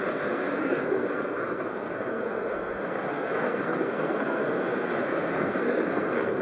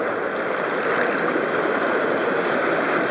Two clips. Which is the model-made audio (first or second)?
first